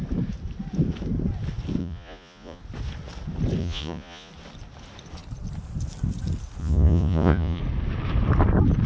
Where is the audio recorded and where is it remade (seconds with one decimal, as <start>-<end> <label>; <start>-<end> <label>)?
0.0-1.8 recorded; 1.8-2.6 remade; 2.6-3.6 recorded; 3.6-4.3 remade; 4.3-6.6 recorded; 6.6-7.6 remade; 7.6-8.9 recorded